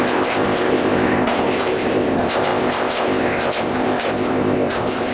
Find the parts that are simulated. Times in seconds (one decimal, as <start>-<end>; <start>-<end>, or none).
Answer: 0.0-5.1